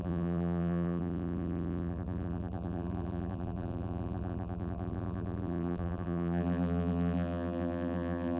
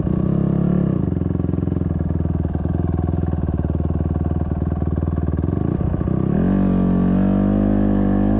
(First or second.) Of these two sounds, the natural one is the second